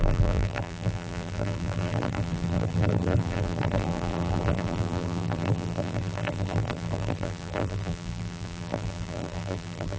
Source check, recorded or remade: remade